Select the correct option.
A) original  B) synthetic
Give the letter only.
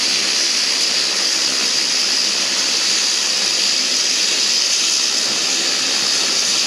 A